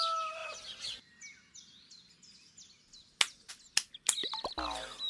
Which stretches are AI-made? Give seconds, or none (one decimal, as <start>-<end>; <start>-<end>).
none